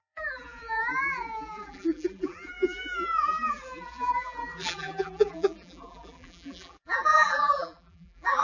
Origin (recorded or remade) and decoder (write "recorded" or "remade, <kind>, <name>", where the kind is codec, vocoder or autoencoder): remade, vocoder, BigVGAN v2